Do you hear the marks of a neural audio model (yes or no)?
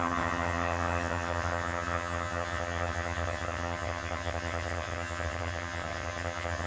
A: yes